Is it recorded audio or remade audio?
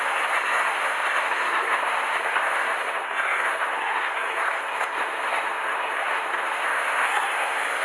remade